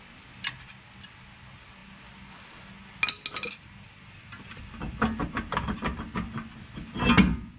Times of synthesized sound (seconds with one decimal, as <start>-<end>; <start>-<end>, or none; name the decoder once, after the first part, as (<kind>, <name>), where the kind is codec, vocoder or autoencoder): none